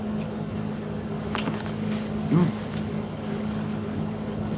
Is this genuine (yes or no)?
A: no